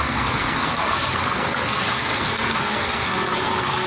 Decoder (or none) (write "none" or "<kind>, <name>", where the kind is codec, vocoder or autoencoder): codec, SNAC